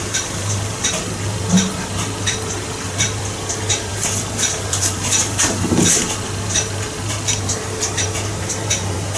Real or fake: fake